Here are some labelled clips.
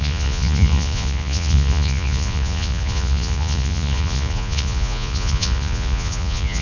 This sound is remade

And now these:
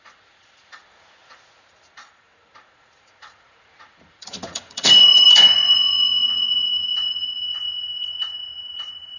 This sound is remade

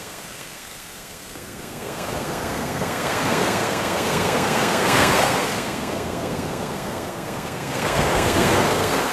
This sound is remade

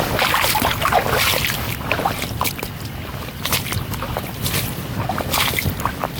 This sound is recorded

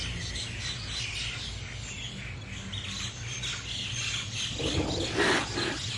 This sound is recorded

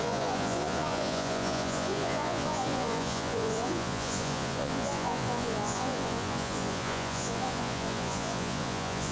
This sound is remade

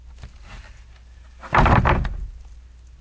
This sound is recorded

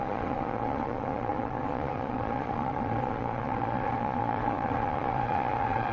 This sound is remade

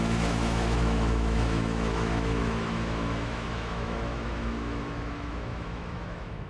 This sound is remade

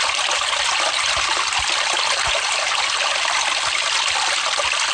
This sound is recorded